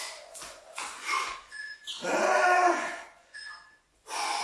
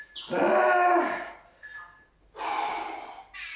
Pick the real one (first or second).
second